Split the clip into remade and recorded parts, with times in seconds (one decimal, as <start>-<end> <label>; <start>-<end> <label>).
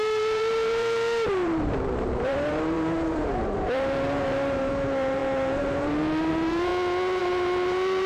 0.0-6.7 remade; 6.7-7.2 recorded; 7.2-8.1 remade